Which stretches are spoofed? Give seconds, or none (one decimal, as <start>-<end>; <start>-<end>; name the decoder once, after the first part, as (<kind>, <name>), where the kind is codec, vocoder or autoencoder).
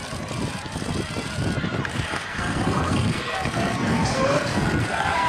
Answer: 1.9-5.3 (codec, SNAC)